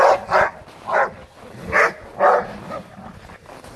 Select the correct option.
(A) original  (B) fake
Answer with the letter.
A